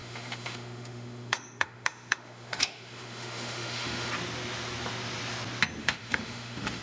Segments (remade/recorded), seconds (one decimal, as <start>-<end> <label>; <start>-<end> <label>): 0.0-4.1 remade; 4.1-5.8 recorded; 5.8-6.8 remade